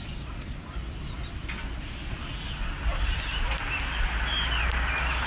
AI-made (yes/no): no